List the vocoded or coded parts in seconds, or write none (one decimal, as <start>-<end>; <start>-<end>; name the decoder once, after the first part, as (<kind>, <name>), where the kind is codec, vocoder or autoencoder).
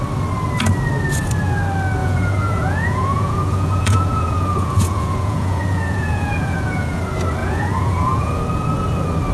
2.0-7.0 (vocoder, Vocos); 7.4-8.4